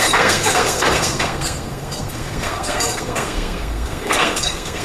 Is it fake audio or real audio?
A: fake